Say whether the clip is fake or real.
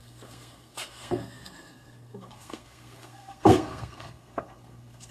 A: fake